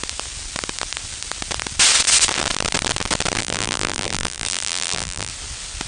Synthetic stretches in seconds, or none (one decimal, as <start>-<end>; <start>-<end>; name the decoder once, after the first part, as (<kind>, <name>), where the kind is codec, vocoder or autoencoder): 3.4-5.3 (vocoder, BigVGAN v2)